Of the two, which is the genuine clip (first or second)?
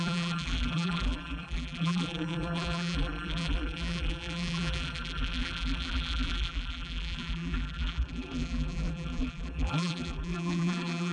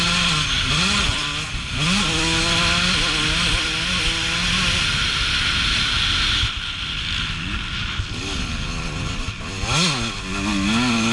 second